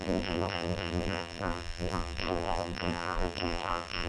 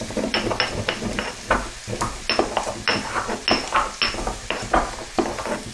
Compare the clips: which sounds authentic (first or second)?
second